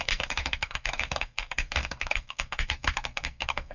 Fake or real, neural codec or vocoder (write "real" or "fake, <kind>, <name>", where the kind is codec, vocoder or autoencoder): fake, codec, SNAC